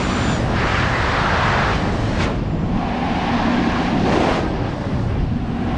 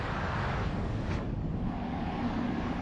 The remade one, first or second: second